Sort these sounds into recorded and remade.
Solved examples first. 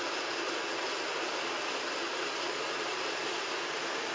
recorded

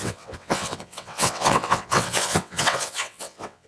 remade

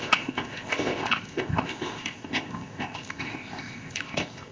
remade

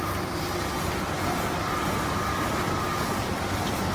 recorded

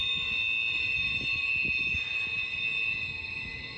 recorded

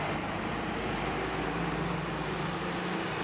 recorded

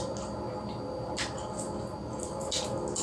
recorded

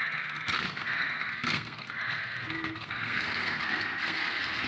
remade